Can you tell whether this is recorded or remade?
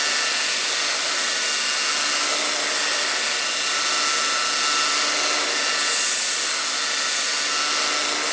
recorded